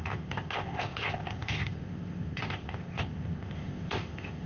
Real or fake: fake